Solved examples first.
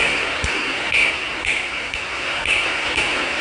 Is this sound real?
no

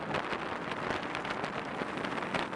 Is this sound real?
yes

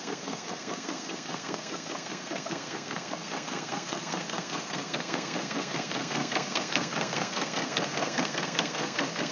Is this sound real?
no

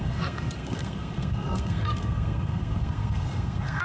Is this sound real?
no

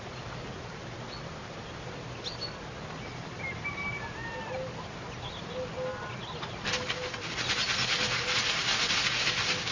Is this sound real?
yes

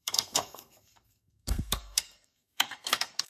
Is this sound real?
no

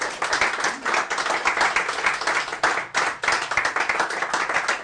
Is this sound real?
yes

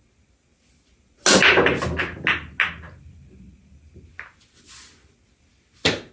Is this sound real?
yes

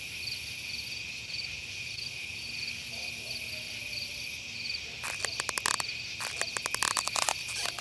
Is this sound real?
yes